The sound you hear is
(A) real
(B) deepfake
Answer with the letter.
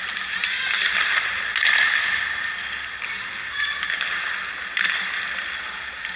A